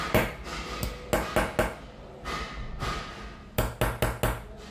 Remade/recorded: recorded